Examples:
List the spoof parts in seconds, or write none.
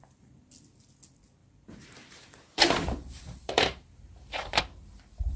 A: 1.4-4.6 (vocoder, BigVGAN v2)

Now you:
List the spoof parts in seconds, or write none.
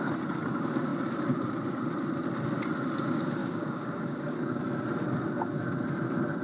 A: 3.4-4.6 (codec, DAC)